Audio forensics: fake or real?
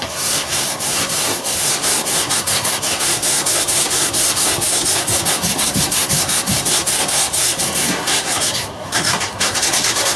fake